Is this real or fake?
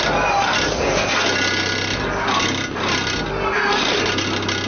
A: real